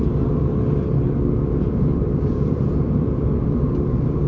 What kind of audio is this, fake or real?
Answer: real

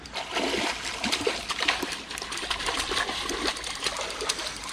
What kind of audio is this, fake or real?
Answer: real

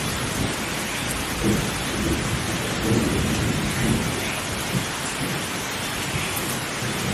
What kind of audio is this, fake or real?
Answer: real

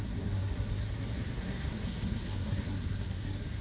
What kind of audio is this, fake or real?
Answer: fake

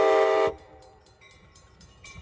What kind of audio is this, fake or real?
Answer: fake